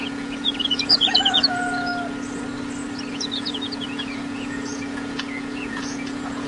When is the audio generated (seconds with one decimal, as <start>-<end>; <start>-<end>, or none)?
0.0-1.9; 3.1-6.5